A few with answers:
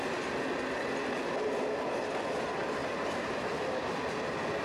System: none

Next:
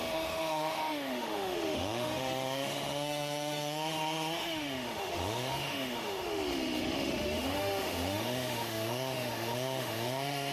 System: autoencoder, DAC-VAE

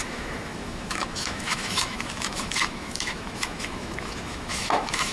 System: autoencoder, DAC-VAE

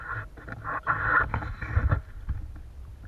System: none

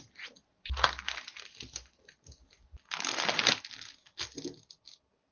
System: none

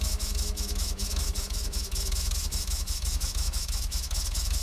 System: autoencoder, DAC-VAE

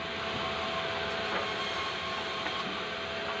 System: none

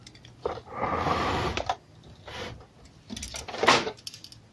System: none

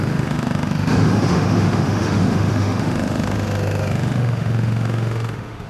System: autoencoder, DAC-VAE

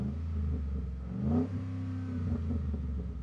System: none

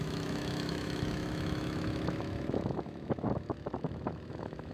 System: autoencoder, DAC-VAE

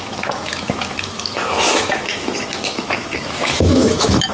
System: autoencoder, DAC-VAE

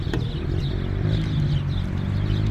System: none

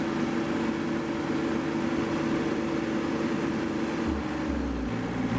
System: none